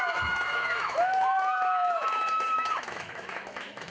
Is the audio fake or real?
fake